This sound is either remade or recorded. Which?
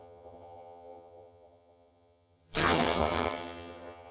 remade